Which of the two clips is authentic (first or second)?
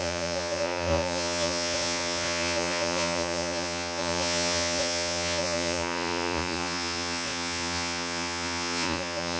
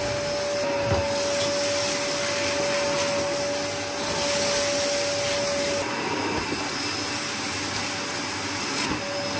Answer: second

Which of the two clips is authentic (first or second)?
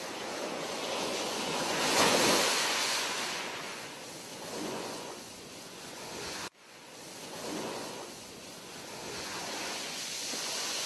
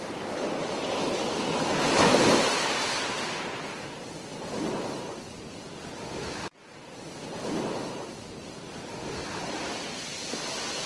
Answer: second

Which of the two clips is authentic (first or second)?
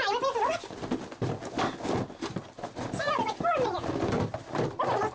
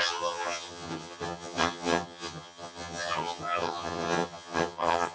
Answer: first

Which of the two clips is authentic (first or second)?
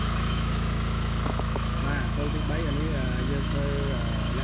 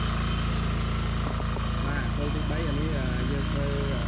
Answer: second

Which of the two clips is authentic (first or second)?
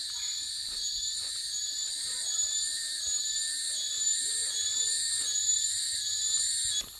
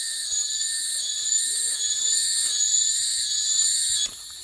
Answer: first